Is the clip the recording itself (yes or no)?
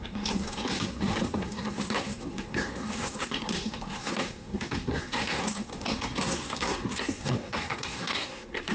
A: no